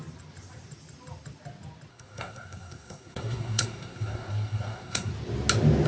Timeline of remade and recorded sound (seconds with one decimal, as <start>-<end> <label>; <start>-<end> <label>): 0.0-1.9 recorded; 1.9-5.1 remade; 5.1-5.9 recorded